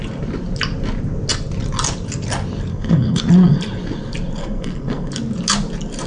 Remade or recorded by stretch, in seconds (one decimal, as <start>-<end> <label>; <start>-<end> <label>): 0.0-2.7 recorded; 2.7-3.2 remade; 3.2-4.4 recorded; 4.4-5.1 remade; 5.1-6.1 recorded